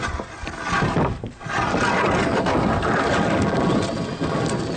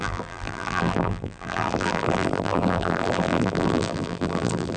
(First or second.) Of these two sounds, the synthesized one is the second